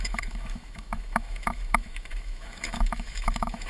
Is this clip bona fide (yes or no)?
no